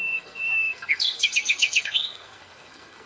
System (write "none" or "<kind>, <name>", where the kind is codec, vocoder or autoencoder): codec, SNAC